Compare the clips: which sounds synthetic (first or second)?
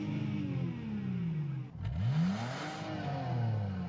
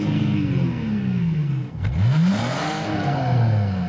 second